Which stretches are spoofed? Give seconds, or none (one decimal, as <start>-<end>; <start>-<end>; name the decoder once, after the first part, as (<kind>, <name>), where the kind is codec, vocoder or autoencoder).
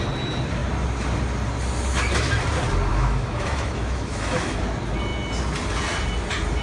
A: 2.9-4.6 (autoencoder, DAC-VAE)